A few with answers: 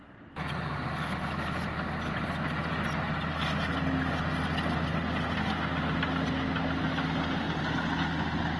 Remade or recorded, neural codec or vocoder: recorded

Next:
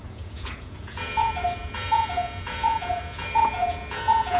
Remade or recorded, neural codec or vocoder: remade, vocoder, Vocos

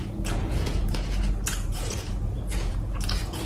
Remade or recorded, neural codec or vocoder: remade, vocoder, Vocos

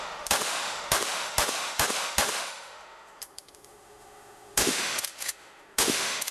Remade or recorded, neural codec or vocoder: remade, autoencoder, DAC-VAE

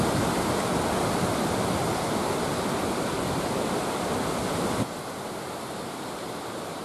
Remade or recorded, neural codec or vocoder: recorded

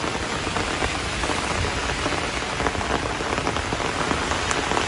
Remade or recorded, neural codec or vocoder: recorded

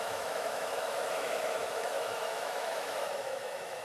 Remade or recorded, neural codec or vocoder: remade, autoencoder, DAC-VAE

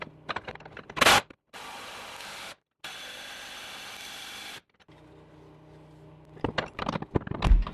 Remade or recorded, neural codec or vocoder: recorded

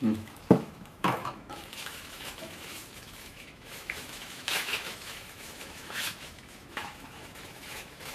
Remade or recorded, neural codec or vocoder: remade, autoencoder, DAC-VAE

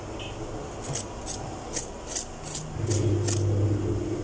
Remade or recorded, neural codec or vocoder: recorded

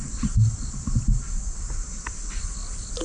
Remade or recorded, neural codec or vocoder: recorded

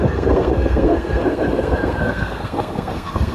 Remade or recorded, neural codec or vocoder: remade, codec, SNAC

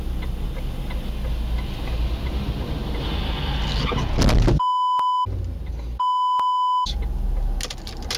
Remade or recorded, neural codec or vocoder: recorded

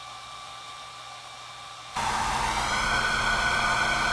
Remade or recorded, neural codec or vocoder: remade, vocoder, BigVGAN v2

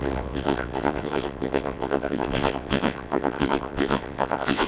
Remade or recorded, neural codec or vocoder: remade, vocoder, WaveNeXt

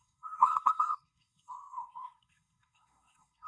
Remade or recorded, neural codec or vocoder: remade, codec, SNAC